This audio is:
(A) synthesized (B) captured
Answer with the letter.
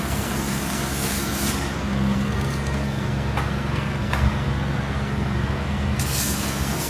A